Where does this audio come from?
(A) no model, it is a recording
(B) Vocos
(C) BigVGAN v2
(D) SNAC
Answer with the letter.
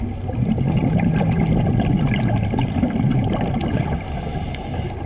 A